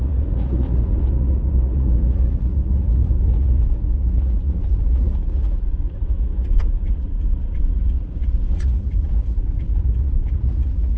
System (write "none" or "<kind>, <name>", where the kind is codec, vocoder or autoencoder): vocoder, Vocos